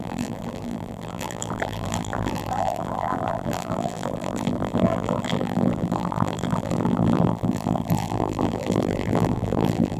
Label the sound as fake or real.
fake